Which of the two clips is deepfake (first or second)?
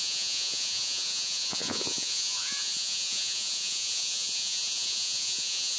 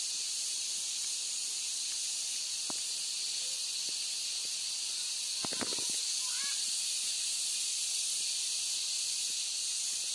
first